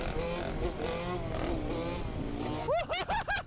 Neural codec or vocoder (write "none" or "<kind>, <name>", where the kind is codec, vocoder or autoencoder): none